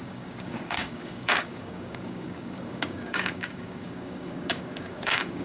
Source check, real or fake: fake